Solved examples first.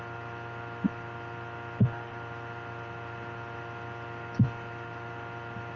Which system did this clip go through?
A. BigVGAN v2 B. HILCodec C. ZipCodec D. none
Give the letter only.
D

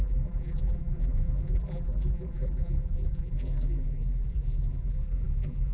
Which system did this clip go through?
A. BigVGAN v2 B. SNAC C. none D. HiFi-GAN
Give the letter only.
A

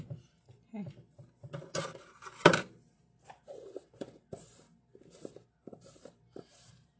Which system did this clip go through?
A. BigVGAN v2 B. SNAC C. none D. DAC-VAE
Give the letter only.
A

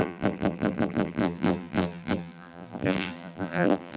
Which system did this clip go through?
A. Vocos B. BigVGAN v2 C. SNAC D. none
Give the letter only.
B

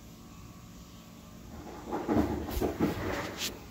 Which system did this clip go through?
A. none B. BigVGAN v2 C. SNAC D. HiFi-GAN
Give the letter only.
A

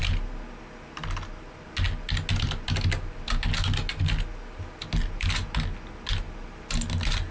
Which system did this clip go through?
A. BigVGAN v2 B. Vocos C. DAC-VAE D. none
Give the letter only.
D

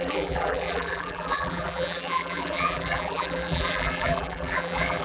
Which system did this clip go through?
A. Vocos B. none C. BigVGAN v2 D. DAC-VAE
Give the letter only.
C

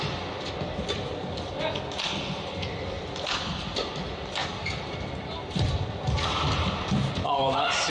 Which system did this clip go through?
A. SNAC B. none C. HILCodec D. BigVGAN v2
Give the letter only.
D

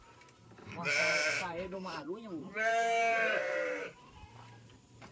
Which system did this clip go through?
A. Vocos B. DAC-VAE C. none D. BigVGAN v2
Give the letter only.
D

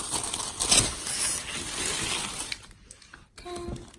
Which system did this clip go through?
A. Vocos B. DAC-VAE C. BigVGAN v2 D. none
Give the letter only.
D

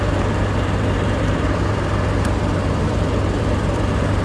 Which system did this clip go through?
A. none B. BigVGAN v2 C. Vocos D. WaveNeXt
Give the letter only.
B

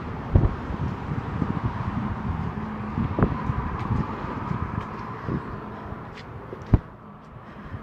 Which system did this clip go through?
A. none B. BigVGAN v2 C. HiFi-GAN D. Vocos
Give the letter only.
B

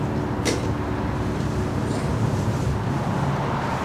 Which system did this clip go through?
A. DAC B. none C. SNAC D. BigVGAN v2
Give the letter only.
B